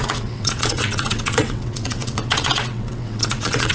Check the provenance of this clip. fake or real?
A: fake